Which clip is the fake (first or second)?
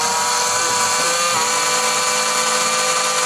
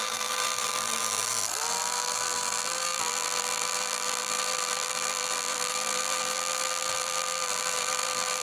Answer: second